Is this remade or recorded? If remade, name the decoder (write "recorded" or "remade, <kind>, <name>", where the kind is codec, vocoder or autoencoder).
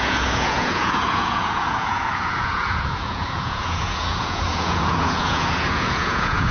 remade, vocoder, Vocos